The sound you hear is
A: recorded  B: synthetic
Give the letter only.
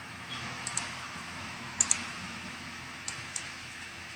B